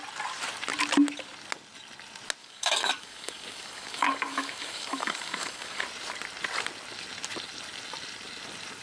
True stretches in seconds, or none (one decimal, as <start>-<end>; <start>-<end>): 0.0-2.4; 5.8-8.8